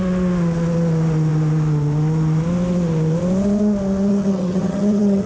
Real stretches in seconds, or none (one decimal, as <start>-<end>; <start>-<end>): 0.0-4.1